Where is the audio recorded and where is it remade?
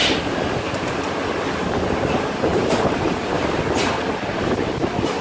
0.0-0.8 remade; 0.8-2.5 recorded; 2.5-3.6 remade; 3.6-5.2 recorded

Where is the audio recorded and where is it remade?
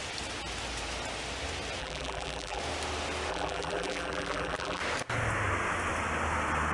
0.0-1.8 recorded; 1.8-2.6 remade; 2.6-3.3 recorded; 3.3-4.8 remade; 4.8-6.7 recorded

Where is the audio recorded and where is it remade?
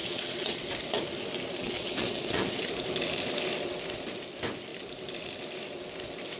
0.0-0.6 remade; 0.6-1.6 recorded; 1.6-2.7 remade; 2.7-6.4 recorded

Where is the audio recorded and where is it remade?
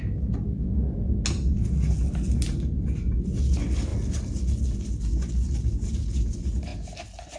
0.0-7.4 recorded